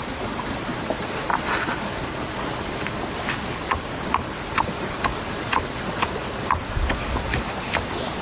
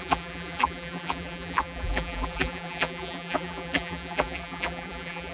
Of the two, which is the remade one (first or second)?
second